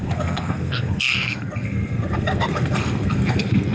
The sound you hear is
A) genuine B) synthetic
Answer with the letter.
B